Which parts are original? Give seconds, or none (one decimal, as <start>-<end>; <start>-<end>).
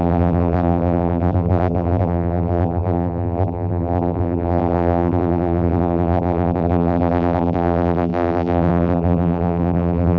none